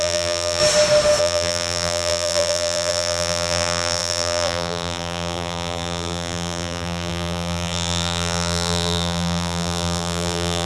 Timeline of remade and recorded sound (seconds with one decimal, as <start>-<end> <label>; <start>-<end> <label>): 0.0-0.6 remade; 0.6-1.2 recorded; 1.2-10.6 remade